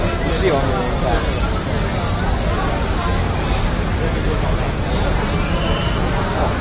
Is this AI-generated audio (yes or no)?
no